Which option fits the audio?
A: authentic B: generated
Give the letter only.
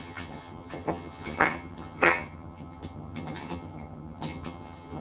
B